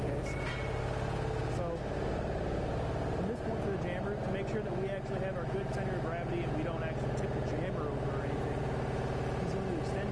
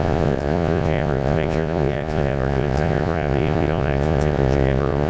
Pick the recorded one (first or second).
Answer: first